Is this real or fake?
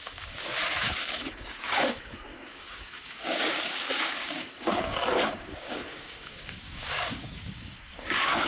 fake